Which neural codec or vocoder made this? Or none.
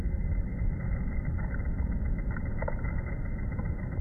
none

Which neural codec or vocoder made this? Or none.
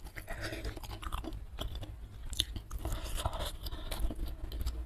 none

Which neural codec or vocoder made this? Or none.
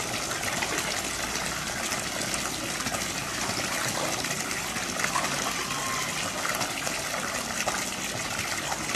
none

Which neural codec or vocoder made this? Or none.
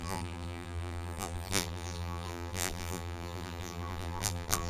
vocoder, BigVGAN v2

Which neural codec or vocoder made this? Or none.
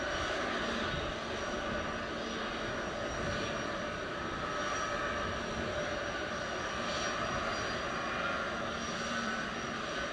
none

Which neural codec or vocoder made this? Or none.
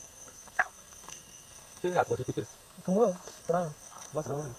codec, SNAC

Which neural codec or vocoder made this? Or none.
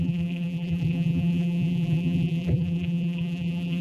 vocoder, BigVGAN v2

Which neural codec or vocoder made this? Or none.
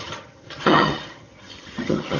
vocoder, HiFi-GAN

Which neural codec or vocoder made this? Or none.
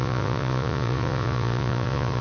vocoder, Vocos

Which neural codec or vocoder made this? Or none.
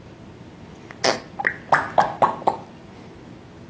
none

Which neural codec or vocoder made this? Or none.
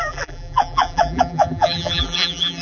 vocoder, BigVGAN v2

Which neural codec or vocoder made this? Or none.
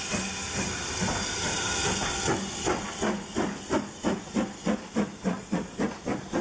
none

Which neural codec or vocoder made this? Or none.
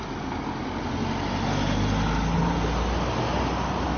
none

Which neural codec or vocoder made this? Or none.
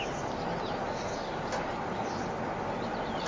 none